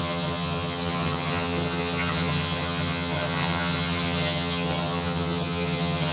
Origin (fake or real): fake